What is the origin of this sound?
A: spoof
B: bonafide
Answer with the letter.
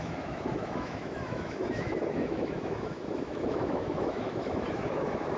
A